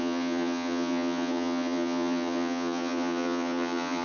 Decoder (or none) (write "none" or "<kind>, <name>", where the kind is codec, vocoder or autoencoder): vocoder, HiFi-GAN